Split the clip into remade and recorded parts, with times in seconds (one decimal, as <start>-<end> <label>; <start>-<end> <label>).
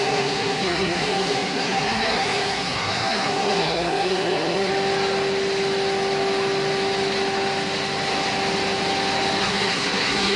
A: 0.0-4.7 remade; 4.7-9.4 recorded; 9.4-10.4 remade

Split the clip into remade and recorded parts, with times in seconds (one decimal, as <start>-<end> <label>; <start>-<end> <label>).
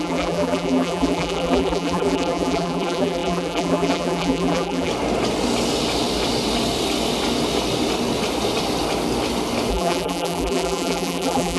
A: 0.0-4.9 remade; 4.9-9.7 recorded; 9.7-11.6 remade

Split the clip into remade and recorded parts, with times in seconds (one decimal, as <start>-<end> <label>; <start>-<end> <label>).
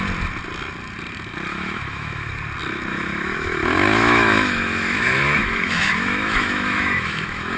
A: 0.0-1.5 recorded; 1.5-2.3 remade; 2.3-2.9 recorded; 2.9-7.6 remade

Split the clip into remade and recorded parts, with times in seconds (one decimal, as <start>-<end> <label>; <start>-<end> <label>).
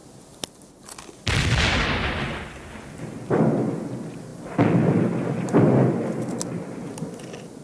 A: 0.0-7.6 recorded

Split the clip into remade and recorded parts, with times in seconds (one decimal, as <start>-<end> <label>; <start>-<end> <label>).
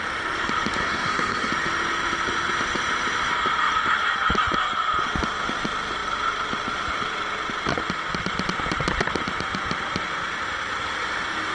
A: 0.0-0.8 recorded; 0.8-1.5 remade; 1.5-11.5 recorded